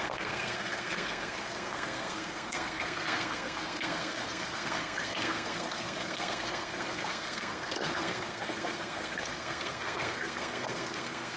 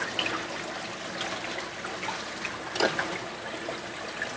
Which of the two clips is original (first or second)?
second